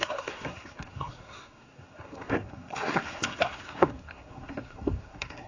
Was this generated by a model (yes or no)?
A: yes